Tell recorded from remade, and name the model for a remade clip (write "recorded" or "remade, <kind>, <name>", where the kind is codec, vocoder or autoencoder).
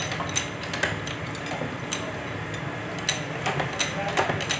recorded